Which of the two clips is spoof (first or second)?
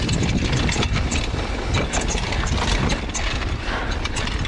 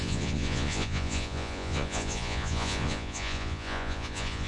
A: second